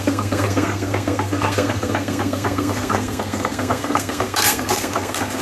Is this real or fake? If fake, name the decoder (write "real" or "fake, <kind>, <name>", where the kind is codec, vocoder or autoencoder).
fake, codec, SNAC